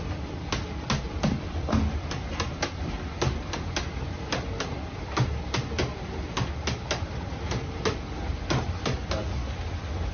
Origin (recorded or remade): recorded